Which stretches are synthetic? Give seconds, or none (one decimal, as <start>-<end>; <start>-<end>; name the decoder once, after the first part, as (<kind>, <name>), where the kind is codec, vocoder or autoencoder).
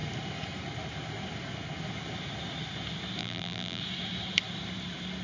3.2-3.8 (vocoder, BigVGAN v2)